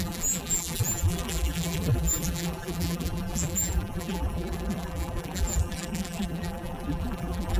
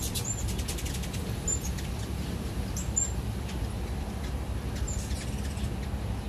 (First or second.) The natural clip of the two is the second